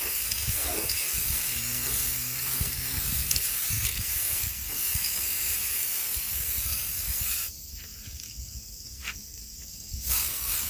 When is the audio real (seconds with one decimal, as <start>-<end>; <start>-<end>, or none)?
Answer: none